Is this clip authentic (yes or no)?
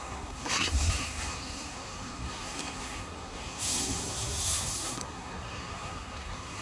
no